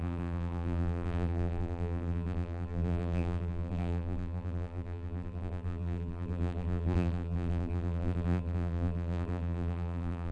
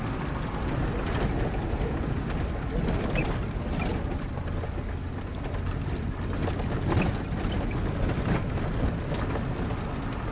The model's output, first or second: first